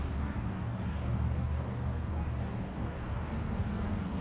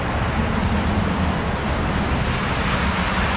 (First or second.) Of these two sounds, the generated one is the first